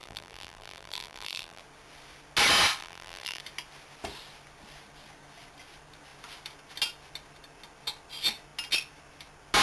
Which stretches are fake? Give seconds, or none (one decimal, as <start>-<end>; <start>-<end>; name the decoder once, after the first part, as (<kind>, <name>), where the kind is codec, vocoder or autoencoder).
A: 0.0-1.6 (vocoder, BigVGAN v2); 2.8-3.4